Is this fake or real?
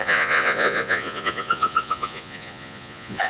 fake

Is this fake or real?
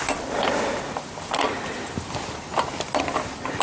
real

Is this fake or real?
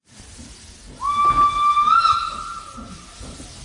real